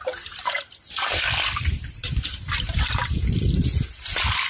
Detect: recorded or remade remade